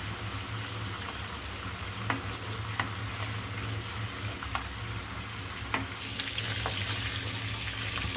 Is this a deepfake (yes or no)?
no